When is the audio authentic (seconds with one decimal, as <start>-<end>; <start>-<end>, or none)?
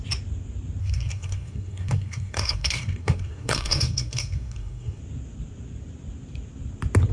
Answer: 0.0-0.8; 5.0-7.1